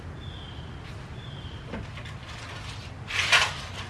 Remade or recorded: recorded